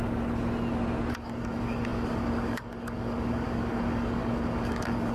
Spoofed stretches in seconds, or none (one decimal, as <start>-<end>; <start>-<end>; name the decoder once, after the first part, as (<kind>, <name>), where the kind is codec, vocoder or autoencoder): 1.1-5.1 (codec, DAC)